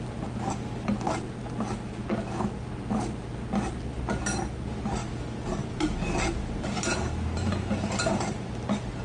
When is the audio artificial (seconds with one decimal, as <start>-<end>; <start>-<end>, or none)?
none